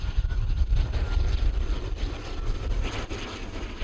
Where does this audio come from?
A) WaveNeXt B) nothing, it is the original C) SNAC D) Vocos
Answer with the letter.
B